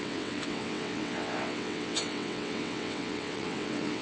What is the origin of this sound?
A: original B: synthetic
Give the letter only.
B